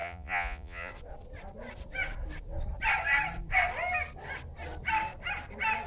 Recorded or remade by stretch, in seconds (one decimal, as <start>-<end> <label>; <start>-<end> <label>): 0.0-0.9 remade; 0.9-5.9 recorded